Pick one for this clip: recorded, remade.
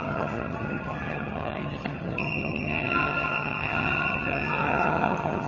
remade